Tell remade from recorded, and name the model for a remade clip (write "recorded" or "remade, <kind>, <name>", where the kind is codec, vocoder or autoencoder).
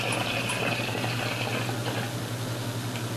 recorded